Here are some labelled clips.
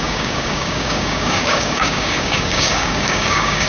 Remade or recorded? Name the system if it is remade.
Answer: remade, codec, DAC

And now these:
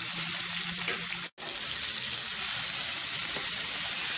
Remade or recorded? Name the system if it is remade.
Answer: recorded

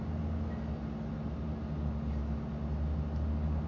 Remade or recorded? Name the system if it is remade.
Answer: recorded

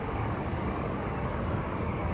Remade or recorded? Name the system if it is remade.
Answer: remade, codec, DAC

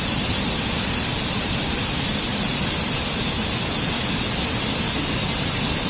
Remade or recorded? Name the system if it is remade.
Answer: recorded